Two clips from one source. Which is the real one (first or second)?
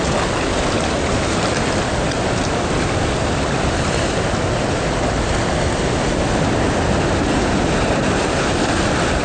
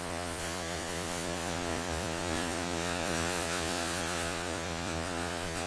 first